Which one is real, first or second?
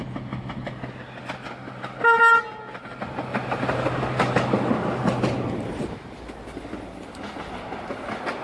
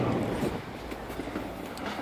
second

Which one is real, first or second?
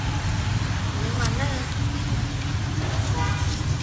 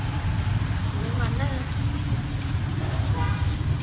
first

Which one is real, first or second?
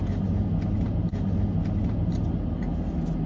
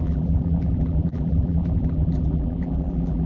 first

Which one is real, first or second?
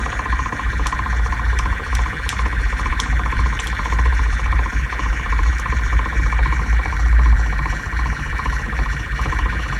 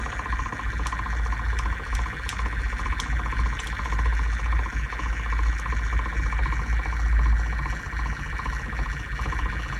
second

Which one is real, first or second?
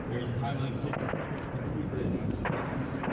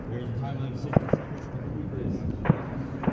second